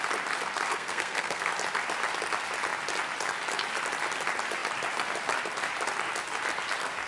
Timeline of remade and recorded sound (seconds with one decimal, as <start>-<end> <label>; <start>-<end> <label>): 0.0-0.7 recorded; 0.7-1.5 remade; 1.5-7.1 recorded